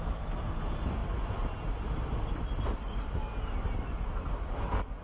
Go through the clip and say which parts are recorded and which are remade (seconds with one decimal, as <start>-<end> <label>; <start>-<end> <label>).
0.0-5.0 recorded